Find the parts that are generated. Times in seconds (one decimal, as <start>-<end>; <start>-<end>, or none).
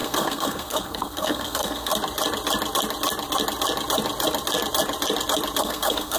0.0-1.9; 5.6-6.2